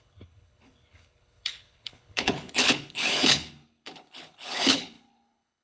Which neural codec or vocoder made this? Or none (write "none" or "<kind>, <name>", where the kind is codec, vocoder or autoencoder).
codec, HILCodec